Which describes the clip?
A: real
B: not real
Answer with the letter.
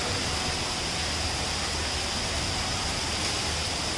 A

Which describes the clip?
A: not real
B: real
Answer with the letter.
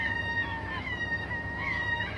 A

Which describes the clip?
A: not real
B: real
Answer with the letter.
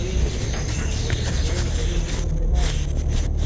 B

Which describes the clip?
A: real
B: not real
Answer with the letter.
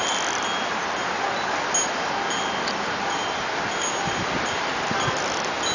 A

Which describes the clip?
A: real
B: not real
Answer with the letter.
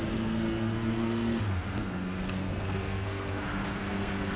B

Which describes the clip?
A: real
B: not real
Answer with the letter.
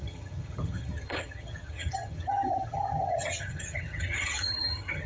B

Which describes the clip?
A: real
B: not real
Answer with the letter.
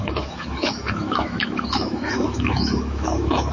B